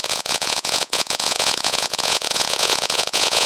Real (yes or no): no